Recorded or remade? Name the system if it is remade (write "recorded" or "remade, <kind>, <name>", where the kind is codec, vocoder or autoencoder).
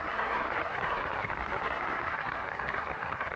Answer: remade, codec, SNAC